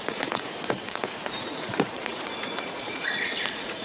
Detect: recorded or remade remade